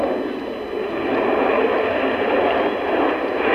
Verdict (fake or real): real